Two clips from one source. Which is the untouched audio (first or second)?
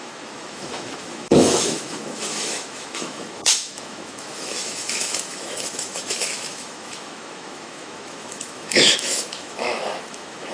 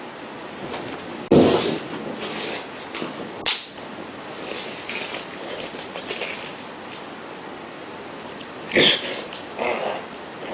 second